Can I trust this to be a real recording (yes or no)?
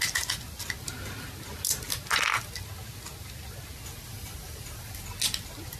yes